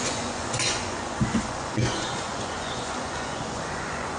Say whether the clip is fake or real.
fake